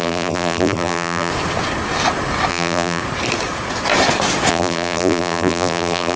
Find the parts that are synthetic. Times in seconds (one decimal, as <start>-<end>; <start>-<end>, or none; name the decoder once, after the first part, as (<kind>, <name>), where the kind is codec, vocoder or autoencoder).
0.0-1.3 (vocoder, BigVGAN v2); 2.5-3.0; 4.5-6.2